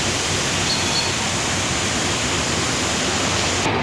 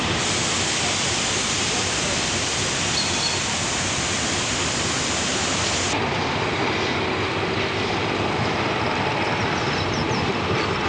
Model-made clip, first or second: second